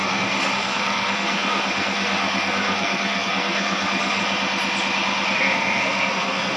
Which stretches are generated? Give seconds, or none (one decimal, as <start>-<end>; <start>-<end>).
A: 0.0-4.2; 5.4-6.6